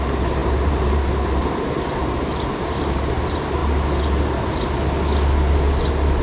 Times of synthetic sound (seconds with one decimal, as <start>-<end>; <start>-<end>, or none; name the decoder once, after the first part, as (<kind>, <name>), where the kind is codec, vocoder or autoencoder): 0.0-2.0 (vocoder, BigVGAN v2); 2.5-3.6